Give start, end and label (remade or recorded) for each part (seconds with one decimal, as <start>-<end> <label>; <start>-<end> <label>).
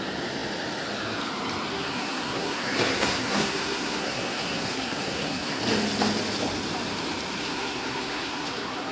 0.0-1.7 recorded; 1.7-5.6 remade; 5.6-7.4 recorded; 7.4-8.9 remade